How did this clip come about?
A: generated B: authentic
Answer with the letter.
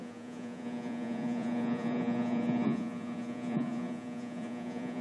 A